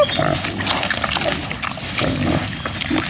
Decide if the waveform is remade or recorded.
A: recorded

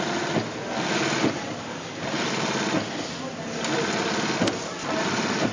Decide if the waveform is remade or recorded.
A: recorded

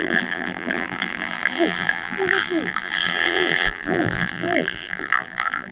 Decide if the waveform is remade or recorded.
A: remade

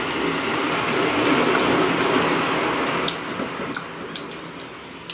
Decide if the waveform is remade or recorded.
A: recorded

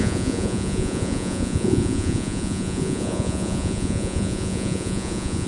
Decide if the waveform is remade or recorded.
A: remade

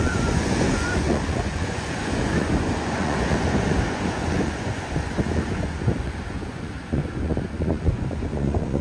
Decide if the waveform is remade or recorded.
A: remade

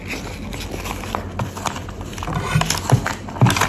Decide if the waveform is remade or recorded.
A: recorded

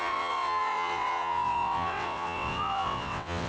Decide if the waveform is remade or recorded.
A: remade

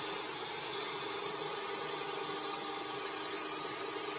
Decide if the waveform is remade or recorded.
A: recorded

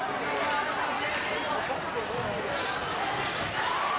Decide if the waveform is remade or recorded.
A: recorded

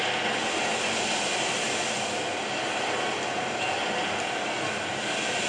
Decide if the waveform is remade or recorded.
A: recorded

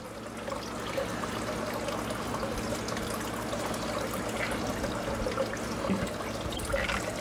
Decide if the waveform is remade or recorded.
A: recorded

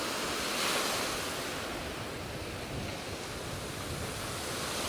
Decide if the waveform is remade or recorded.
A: recorded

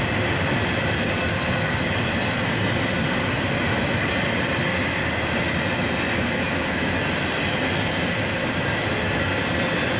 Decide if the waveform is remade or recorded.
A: recorded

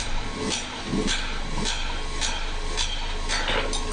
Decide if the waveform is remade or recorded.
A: recorded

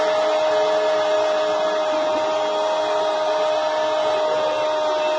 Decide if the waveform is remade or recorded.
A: recorded